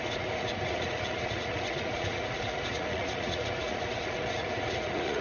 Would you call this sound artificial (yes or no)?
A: yes